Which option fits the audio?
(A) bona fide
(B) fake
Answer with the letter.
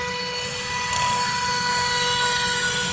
A